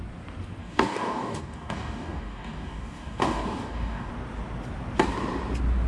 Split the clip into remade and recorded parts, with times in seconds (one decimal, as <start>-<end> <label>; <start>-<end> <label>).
0.0-0.6 recorded; 0.6-4.1 remade; 4.1-5.9 recorded